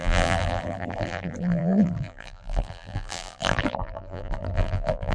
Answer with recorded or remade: remade